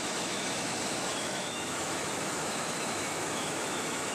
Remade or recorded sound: remade